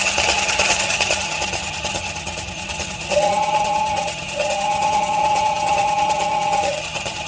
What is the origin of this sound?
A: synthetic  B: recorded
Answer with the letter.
A